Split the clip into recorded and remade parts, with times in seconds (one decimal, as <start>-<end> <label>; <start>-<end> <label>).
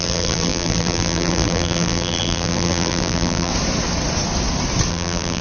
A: 0.0-3.5 remade; 3.5-4.9 recorded; 4.9-5.4 remade